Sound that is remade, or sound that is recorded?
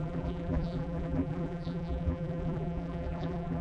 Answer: remade